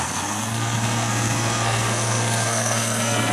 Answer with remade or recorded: remade